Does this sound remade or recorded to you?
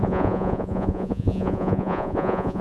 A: remade